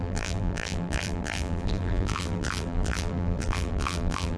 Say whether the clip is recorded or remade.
remade